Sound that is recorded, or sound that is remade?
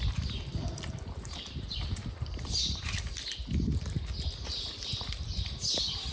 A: remade